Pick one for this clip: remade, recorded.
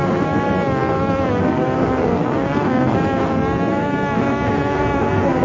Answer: remade